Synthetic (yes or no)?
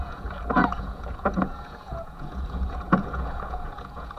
yes